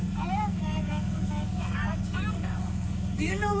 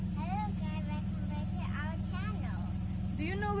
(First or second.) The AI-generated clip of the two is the first